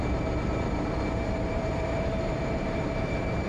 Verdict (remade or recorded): remade